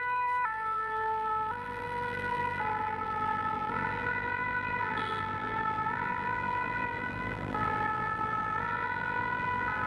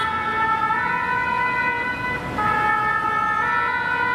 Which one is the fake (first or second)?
first